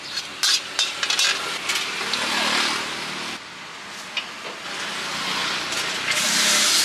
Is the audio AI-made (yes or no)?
no